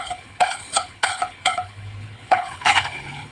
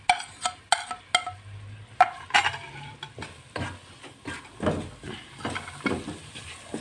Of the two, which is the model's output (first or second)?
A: first